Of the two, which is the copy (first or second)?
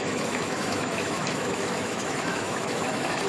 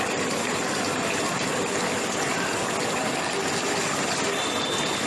first